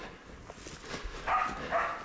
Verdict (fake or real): real